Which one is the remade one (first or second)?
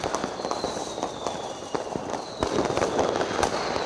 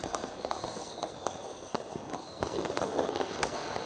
second